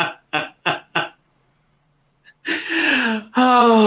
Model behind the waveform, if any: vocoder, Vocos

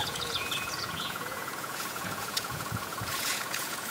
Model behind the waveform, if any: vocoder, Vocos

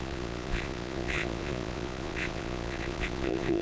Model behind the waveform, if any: vocoder, Vocos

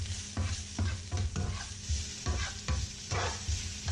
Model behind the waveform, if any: none